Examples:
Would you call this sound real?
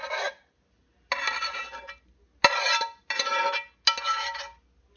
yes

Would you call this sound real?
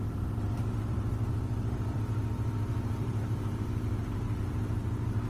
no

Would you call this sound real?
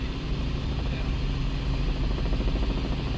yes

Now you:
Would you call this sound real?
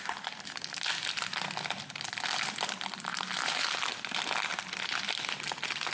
yes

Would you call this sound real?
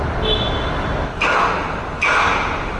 yes